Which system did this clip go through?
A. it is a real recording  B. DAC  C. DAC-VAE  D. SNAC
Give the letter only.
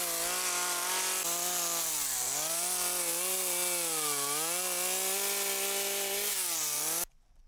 A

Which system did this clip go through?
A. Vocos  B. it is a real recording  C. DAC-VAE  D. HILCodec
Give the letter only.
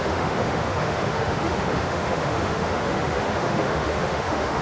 C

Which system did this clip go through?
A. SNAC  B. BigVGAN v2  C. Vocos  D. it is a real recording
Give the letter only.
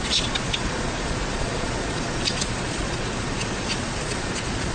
C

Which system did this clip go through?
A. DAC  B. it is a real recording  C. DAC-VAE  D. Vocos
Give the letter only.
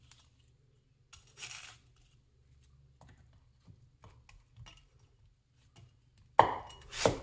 B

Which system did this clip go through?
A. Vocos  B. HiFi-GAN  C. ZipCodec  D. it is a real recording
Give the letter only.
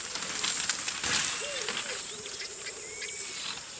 D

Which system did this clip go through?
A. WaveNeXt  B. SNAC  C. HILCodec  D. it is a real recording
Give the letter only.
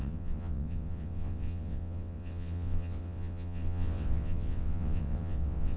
A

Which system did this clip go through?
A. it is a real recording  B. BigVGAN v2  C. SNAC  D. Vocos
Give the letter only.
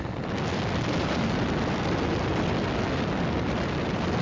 A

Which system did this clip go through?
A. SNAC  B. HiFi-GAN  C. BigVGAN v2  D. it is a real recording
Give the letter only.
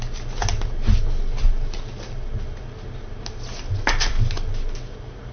D